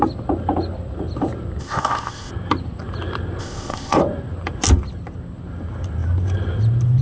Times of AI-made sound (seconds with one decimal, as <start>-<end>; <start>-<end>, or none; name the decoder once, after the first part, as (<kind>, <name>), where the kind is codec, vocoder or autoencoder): 1.6-2.3 (codec, ZipCodec); 3.4-4.0